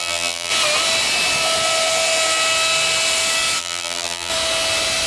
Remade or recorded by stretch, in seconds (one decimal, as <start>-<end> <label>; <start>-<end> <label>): 0.0-0.5 remade; 0.5-3.6 recorded; 3.6-4.3 remade; 4.3-5.1 recorded